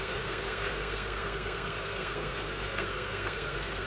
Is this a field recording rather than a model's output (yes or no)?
no